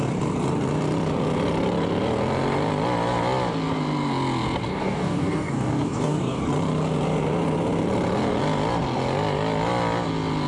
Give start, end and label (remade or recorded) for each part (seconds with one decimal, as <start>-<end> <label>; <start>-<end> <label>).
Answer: 0.0-4.7 recorded; 4.7-6.4 remade; 6.4-10.5 recorded